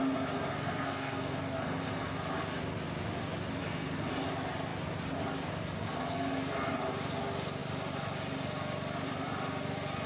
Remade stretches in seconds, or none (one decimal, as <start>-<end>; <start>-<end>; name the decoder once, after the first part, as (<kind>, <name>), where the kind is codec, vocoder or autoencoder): 0.5-2.0 (codec, SNAC); 3.6-4.1